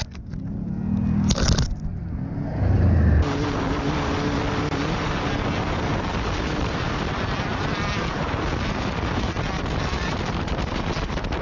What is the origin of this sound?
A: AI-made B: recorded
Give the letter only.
B